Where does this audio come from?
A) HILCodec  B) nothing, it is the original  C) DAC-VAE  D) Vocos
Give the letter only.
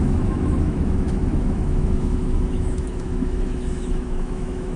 C